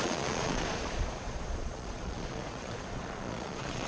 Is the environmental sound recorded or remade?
remade